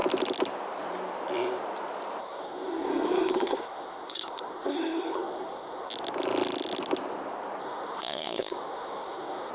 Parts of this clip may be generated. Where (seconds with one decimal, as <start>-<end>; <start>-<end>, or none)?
2.2-5.9; 7.6-9.5